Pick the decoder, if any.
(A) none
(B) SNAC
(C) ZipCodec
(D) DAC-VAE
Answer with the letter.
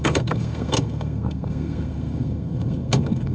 B